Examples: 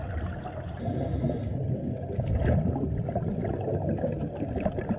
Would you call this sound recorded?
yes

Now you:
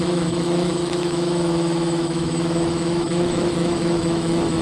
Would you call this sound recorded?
no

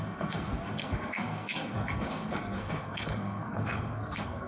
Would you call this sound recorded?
no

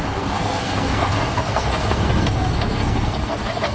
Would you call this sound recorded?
no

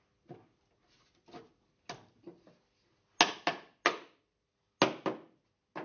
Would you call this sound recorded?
yes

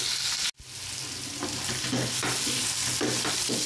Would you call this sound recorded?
yes